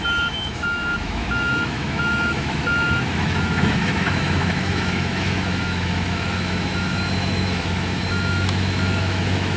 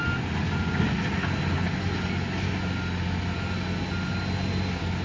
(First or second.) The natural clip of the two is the second